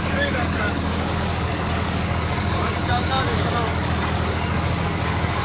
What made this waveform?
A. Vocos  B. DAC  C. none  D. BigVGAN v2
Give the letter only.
B